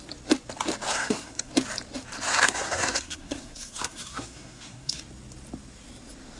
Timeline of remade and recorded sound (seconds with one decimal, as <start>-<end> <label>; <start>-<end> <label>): 0.0-0.9 recorded; 0.9-1.5 remade; 1.5-2.3 recorded; 2.3-5.0 remade; 5.0-6.4 recorded